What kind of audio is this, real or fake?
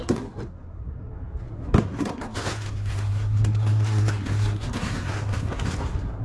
fake